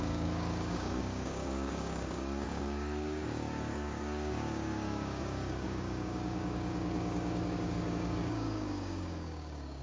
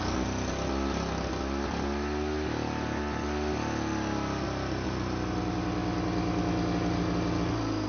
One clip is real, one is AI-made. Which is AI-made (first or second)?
first